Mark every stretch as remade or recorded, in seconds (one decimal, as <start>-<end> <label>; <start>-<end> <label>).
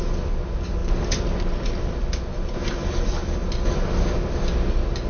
0.0-5.1 recorded